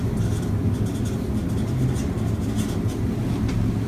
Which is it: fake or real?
real